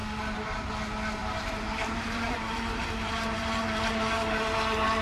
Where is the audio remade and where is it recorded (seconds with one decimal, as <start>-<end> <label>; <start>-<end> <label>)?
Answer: 0.0-1.2 recorded; 1.2-3.6 remade; 3.6-5.0 recorded